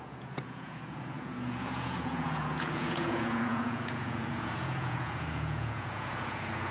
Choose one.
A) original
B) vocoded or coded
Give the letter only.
B